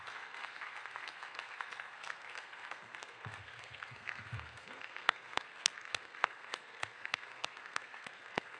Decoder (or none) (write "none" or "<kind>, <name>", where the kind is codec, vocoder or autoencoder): codec, SNAC